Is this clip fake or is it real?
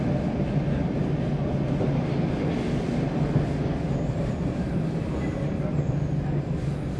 real